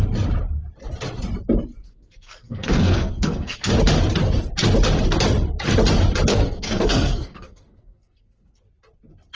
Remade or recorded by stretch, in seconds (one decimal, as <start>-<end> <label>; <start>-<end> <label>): 0.0-1.8 recorded; 1.8-3.7 remade; 3.7-6.3 recorded; 6.3-8.6 remade; 8.6-9.3 recorded